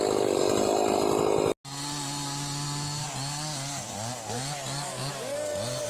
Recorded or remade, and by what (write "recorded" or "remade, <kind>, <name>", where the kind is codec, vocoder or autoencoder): recorded